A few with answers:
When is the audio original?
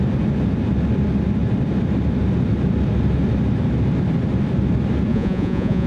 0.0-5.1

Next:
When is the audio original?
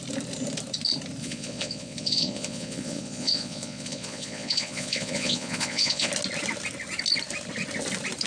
0.0-1.2; 6.1-8.3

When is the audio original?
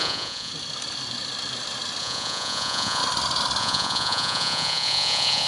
0.5-2.0; 3.0-3.6